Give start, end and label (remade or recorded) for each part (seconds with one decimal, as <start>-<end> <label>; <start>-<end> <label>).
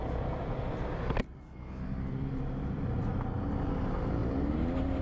0.0-4.2 recorded; 4.2-5.0 remade